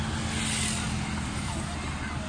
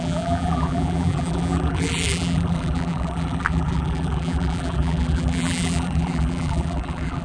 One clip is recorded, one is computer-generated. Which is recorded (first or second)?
first